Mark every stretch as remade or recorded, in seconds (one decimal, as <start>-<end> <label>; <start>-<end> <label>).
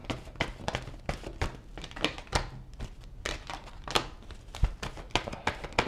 0.0-5.9 recorded